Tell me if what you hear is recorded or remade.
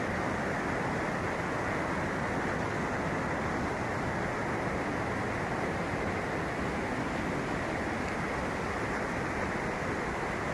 recorded